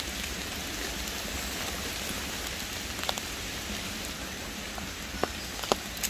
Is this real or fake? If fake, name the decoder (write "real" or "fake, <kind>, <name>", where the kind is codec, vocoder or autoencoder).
real